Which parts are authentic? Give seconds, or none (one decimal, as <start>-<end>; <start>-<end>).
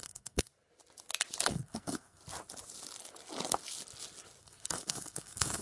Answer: 0.5-1.5; 2.2-4.4